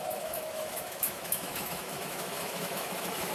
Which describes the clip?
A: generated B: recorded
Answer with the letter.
A